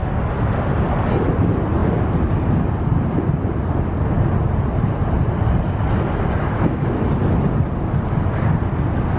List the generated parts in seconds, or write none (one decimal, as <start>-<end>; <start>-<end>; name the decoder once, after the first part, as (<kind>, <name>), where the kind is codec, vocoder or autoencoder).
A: none